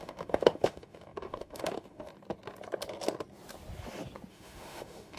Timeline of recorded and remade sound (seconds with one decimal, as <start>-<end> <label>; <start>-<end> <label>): 0.0-2.1 remade; 2.1-4.3 recorded; 4.3-5.2 remade